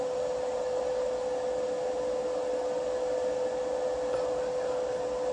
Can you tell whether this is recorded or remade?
recorded